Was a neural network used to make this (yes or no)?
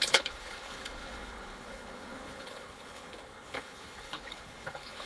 yes